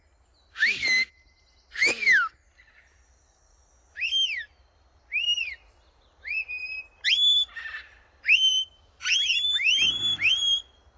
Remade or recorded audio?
recorded